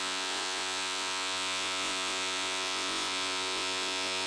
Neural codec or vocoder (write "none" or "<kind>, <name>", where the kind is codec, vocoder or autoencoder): vocoder, Vocos